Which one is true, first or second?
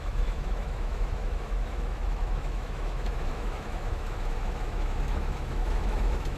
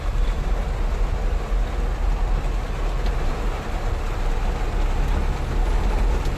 second